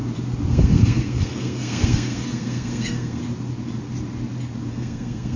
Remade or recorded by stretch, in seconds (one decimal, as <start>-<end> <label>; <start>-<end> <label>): 0.0-0.5 recorded; 0.5-3.2 remade; 3.2-4.7 recorded; 4.7-5.4 remade